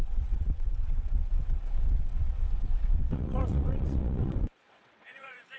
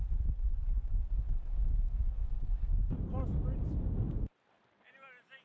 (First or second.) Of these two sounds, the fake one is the first